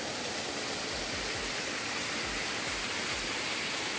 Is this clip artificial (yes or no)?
no